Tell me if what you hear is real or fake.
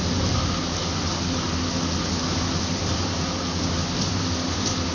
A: real